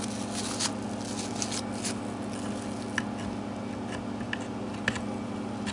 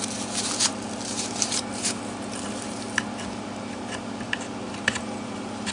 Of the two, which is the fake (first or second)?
second